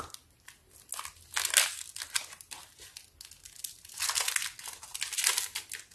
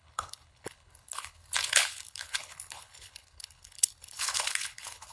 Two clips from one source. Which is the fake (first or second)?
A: second